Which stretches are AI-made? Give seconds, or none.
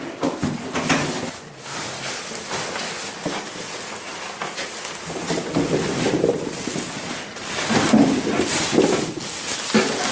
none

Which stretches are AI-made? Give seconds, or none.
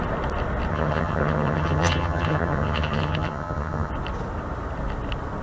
0.7-3.9 (vocoder, HiFi-GAN)